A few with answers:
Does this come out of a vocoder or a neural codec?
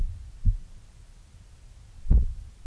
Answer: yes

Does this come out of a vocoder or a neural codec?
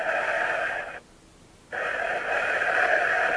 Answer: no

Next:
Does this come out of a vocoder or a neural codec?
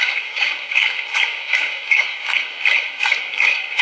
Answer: yes